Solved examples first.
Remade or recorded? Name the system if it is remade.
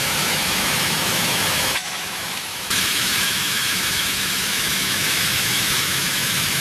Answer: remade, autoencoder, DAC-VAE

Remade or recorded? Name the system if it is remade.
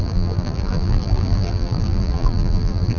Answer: remade, vocoder, BigVGAN v2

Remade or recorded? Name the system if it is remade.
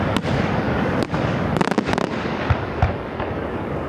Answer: remade, codec, DAC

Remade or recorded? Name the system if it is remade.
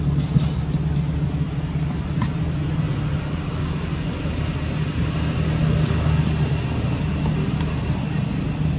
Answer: recorded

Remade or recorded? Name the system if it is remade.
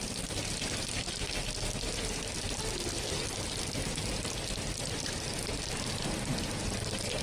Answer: recorded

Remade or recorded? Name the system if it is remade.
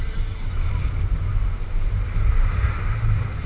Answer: recorded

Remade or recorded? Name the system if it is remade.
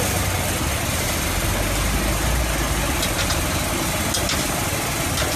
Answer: recorded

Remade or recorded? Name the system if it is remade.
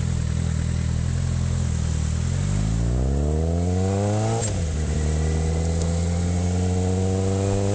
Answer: recorded